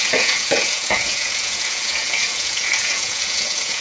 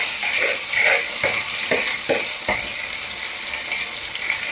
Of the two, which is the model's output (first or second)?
first